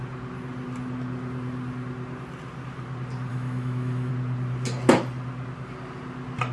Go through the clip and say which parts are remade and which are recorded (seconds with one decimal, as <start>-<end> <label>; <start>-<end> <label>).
0.0-3.3 recorded; 3.3-4.1 remade; 4.1-6.5 recorded